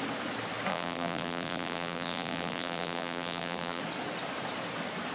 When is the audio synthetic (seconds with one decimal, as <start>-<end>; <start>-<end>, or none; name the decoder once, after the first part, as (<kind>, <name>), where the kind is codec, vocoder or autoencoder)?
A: 0.7-3.8 (vocoder, BigVGAN v2)